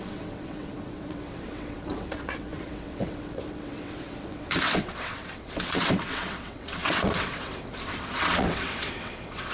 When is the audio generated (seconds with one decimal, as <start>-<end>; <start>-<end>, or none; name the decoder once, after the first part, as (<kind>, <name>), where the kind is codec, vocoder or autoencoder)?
0.0-9.5 (vocoder, WaveNeXt)